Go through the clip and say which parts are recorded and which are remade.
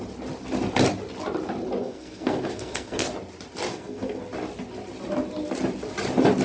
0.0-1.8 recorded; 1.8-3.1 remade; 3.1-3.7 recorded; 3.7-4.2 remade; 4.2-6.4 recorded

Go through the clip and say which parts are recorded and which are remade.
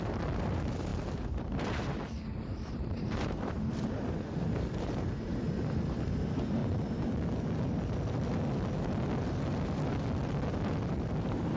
0.0-6.6 remade; 6.6-11.1 recorded; 11.1-11.6 remade